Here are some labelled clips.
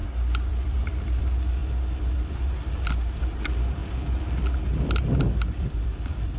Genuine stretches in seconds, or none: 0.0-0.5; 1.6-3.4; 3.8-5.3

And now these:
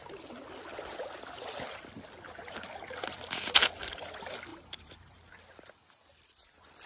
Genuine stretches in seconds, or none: 0.0-4.5; 5.4-6.9

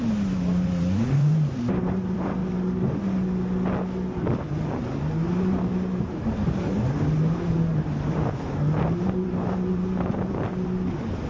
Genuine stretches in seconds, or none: 2.4-5.4; 10.5-11.3